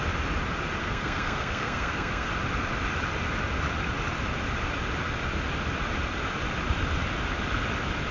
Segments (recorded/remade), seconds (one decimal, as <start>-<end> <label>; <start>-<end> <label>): 0.0-0.8 recorded; 0.8-2.3 remade; 2.3-8.1 recorded